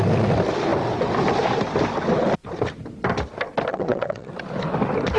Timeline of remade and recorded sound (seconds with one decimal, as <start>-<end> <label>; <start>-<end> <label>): 0.0-3.7 recorded; 3.7-4.3 remade; 4.3-5.2 recorded